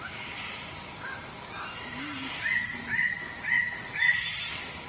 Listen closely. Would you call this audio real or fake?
real